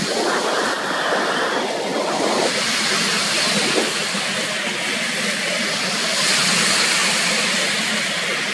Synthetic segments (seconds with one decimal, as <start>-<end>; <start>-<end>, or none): none